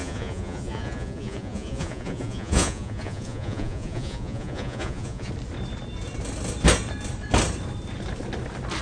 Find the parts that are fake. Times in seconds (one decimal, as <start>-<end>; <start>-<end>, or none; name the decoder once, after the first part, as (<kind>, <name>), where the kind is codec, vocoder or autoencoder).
0.0-5.3 (vocoder, Vocos)